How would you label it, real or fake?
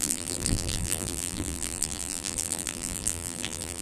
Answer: fake